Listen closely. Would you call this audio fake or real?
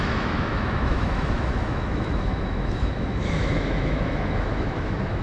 fake